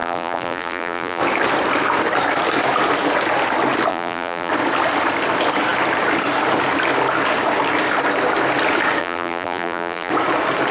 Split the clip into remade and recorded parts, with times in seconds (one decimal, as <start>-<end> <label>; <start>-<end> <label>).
0.0-1.2 remade; 1.2-3.9 recorded; 3.9-4.5 remade; 4.5-9.0 recorded; 9.0-10.1 remade; 10.1-10.7 recorded